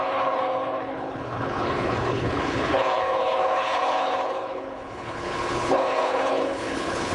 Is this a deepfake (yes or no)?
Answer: yes